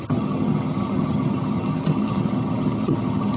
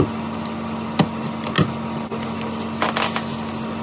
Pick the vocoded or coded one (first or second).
first